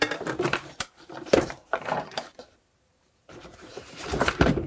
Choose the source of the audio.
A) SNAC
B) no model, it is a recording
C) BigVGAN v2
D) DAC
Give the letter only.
C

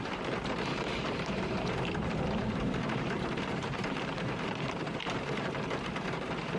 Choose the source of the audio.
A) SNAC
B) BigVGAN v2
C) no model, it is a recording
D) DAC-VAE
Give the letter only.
B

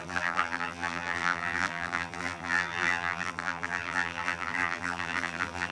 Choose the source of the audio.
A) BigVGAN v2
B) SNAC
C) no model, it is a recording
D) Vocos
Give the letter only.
A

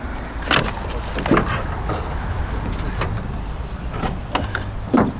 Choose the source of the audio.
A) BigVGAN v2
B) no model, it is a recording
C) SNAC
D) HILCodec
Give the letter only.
B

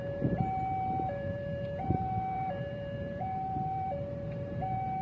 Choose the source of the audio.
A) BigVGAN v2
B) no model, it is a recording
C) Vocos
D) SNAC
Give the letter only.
A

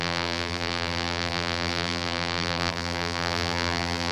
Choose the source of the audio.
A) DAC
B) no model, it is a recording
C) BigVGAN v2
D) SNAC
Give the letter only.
C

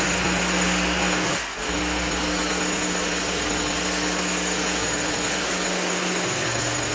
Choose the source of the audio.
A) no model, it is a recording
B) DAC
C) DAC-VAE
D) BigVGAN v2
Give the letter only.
A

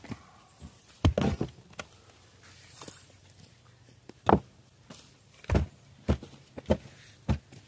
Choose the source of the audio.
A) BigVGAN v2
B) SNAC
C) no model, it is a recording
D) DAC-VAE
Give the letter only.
C